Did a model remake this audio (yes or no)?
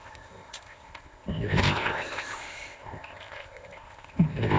yes